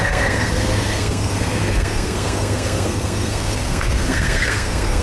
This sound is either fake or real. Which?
fake